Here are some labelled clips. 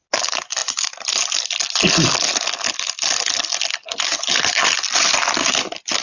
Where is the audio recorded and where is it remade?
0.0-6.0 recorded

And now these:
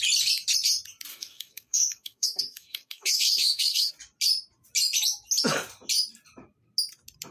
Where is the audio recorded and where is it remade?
0.0-1.1 recorded; 1.1-3.9 remade; 3.9-7.3 recorded

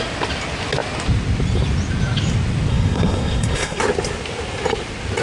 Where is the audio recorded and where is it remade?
0.0-2.7 recorded; 2.7-3.8 remade; 3.8-5.2 recorded

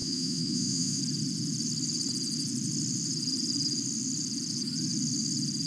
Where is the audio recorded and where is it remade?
0.0-1.0 remade; 1.0-5.7 recorded

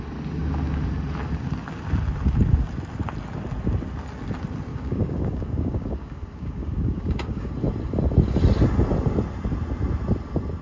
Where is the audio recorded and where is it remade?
0.0-4.7 recorded; 4.7-7.5 remade; 7.5-10.6 recorded